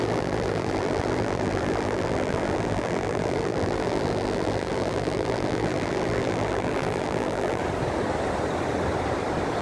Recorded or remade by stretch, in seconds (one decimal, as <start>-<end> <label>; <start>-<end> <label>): 0.0-7.6 remade; 7.6-9.6 recorded

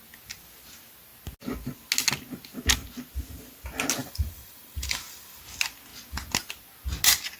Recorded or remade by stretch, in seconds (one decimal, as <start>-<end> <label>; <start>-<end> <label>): 0.0-4.0 recorded; 4.0-5.4 remade; 5.4-7.4 recorded

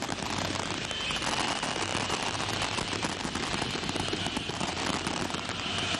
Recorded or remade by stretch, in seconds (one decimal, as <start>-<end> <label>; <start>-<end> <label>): 0.0-1.9 recorded; 1.9-5.2 remade; 5.2-6.0 recorded

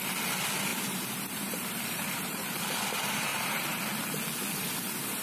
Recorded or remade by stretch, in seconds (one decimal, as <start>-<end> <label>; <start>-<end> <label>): 0.0-0.7 recorded; 0.7-2.6 remade; 2.6-3.3 recorded; 3.3-3.8 remade; 3.8-5.2 recorded

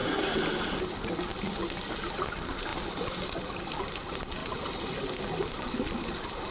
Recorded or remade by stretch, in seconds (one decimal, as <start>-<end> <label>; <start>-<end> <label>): 0.0-2.7 recorded; 2.7-3.3 remade; 3.3-4.4 recorded; 4.4-5.6 remade; 5.6-6.5 recorded

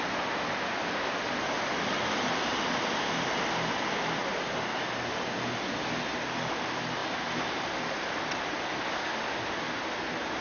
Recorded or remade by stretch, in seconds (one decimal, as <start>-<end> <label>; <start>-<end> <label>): 0.0-7.0 recorded; 7.0-8.4 remade; 8.4-10.4 recorded

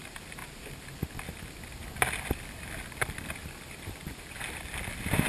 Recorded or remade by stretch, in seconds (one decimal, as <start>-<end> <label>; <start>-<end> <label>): 0.0-3.4 recorded; 3.4-5.3 remade